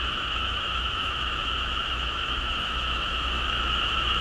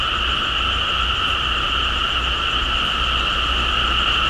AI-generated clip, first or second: first